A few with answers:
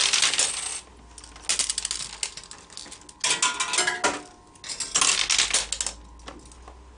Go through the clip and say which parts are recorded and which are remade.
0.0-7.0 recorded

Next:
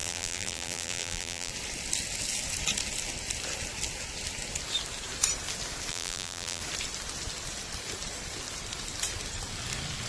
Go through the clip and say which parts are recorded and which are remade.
0.0-1.5 remade; 1.5-5.9 recorded; 5.9-6.6 remade; 6.6-10.1 recorded

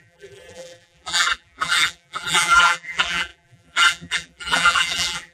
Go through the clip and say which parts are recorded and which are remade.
0.0-5.3 remade

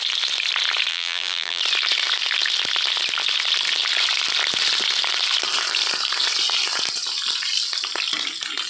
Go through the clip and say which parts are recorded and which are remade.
0.0-0.9 recorded; 0.9-1.6 remade; 1.6-8.7 recorded

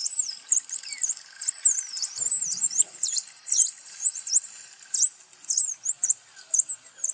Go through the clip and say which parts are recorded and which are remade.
0.0-4.3 remade; 4.3-7.1 recorded